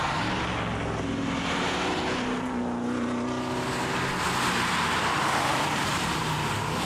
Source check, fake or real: real